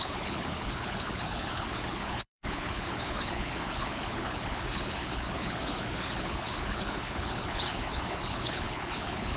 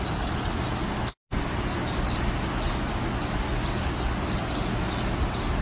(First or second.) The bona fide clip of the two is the second